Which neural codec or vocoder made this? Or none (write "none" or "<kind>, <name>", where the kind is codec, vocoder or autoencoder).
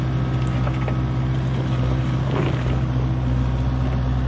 none